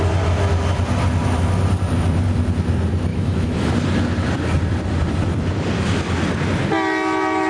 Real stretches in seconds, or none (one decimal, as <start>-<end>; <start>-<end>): 0.0-3.1; 3.7-7.5

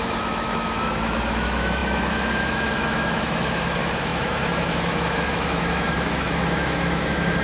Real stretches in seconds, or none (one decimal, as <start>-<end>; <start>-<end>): none

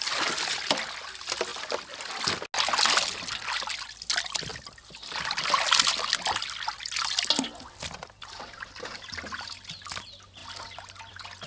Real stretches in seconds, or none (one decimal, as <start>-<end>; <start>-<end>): 0.0-11.5

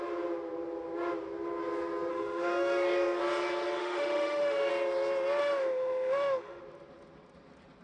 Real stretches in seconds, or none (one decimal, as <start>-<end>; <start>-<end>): 0.0-2.1; 3.2-3.8; 4.7-5.4; 6.6-7.8

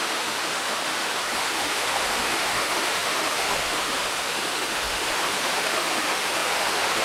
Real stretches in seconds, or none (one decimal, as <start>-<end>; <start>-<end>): none